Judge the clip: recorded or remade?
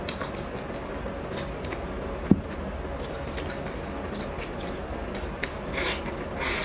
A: recorded